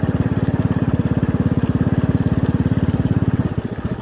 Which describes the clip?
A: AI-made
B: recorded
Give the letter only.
B